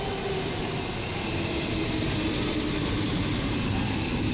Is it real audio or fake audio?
real